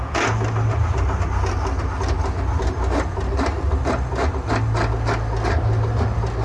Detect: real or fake real